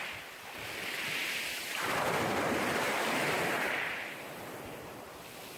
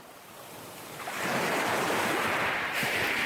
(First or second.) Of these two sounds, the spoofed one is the second